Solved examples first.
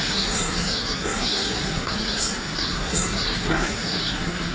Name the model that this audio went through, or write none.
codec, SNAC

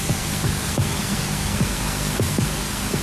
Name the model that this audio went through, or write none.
codec, SNAC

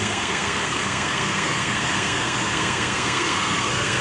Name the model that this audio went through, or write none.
codec, SNAC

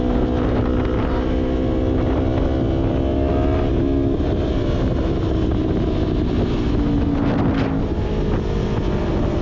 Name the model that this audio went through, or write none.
none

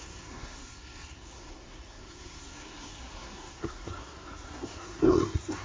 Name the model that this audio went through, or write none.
codec, SNAC